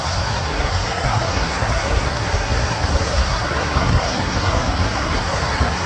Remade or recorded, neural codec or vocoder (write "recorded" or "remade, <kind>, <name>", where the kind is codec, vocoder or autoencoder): remade, codec, SNAC